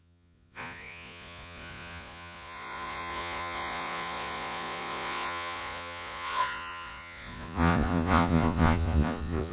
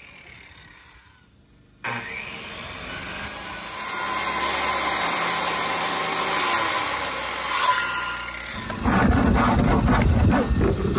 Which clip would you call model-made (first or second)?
first